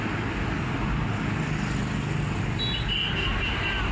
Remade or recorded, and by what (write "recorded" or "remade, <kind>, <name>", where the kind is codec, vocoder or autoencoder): recorded